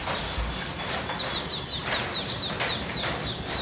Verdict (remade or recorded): recorded